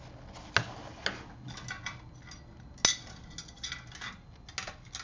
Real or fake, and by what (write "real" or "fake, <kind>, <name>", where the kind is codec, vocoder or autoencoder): real